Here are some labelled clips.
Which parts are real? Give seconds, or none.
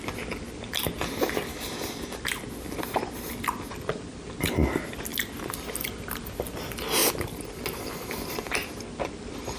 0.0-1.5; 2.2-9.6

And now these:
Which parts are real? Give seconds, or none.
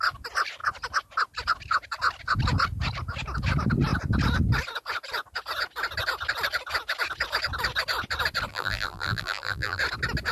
0.0-8.5; 9.8-10.3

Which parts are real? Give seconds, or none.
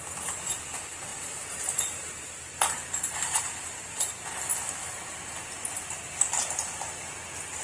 0.0-1.1; 4.1-7.6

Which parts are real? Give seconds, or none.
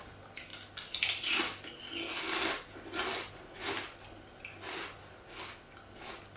0.0-6.4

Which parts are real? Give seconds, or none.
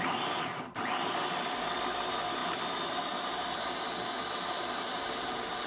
0.0-5.7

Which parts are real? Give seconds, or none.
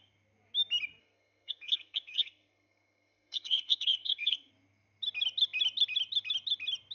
0.0-1.0; 4.5-6.9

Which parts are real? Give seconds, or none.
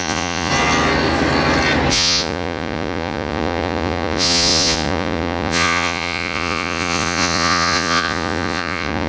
0.5-1.9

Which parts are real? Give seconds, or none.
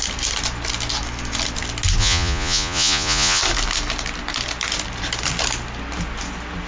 0.0-2.0; 3.4-6.7